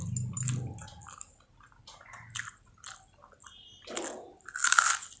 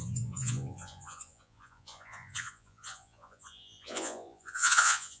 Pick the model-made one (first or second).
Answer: second